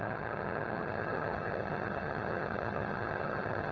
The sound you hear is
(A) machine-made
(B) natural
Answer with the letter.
A